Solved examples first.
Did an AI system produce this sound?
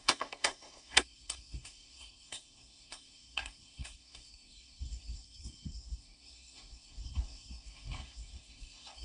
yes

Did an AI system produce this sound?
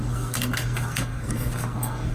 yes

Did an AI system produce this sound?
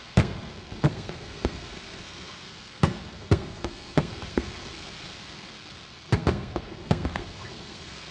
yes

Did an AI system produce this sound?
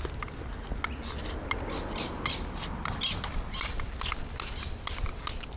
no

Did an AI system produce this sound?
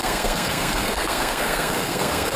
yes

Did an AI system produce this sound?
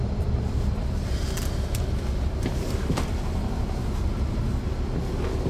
no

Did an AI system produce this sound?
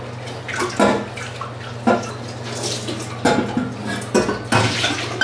no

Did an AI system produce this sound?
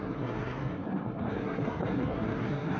yes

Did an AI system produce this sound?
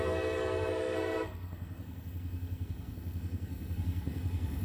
yes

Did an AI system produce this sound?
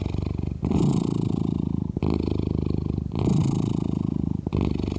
no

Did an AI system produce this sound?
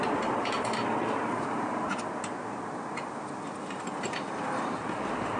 no